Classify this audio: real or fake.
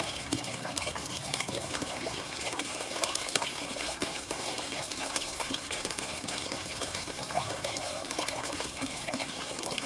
fake